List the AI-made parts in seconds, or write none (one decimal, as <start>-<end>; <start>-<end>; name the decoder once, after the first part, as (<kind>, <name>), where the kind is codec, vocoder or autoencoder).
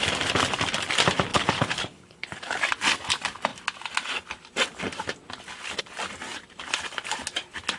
1.3-2.6 (codec, HILCodec)